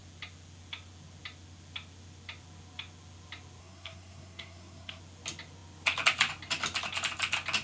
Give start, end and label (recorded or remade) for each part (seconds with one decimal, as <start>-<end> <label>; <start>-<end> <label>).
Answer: 0.0-3.6 recorded; 3.6-5.0 remade; 5.0-7.6 recorded